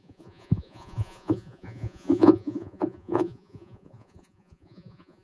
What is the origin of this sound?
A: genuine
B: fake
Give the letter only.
B